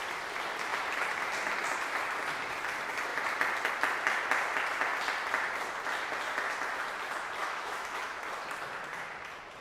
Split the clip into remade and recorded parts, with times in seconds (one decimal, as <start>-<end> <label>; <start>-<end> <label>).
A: 0.0-7.4 recorded; 7.4-8.0 remade; 8.0-9.6 recorded